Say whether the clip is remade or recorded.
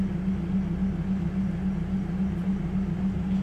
recorded